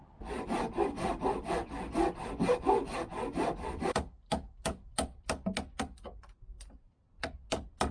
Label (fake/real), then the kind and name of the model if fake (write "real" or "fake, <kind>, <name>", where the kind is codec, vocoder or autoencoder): real